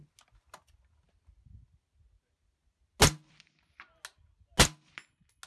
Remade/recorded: recorded